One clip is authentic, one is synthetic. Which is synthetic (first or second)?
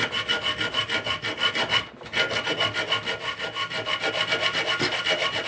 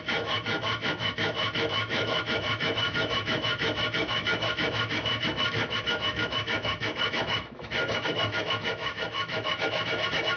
second